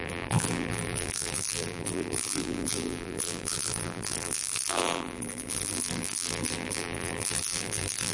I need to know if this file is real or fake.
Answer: fake